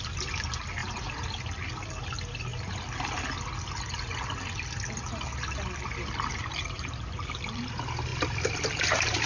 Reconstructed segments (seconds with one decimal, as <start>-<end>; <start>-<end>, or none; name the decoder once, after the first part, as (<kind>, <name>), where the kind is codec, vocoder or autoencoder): 0.8-1.3 (vocoder, BigVGAN v2); 6.4-7.6